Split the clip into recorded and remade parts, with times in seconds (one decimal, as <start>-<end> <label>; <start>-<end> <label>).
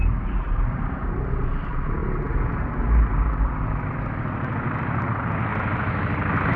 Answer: 0.0-2.0 remade; 2.0-5.0 recorded; 5.0-5.5 remade; 5.5-6.6 recorded